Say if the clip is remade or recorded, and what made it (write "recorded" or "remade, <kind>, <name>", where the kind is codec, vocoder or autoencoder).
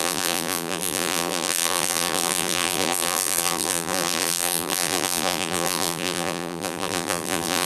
remade, vocoder, BigVGAN v2